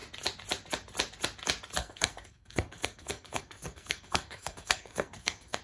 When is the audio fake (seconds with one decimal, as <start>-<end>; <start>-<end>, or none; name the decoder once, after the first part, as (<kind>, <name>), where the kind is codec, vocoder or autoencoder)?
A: 1.8-5.6 (codec, SNAC)